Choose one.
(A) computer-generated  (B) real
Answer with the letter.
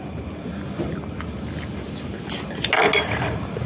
B